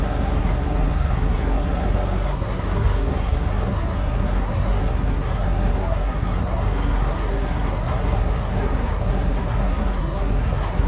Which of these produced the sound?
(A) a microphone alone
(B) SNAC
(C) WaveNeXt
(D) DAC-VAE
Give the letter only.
B